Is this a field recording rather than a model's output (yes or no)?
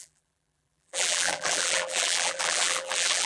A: no